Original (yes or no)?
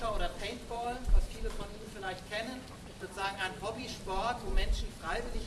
no